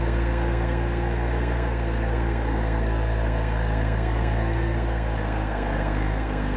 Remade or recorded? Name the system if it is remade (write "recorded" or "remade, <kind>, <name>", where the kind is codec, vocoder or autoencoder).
remade, codec, SNAC